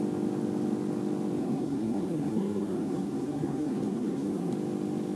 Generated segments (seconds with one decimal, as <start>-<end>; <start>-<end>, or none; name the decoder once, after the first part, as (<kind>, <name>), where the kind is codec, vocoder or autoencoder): 1.4-4.5 (codec, SNAC)